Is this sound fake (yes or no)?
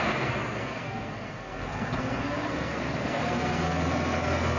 yes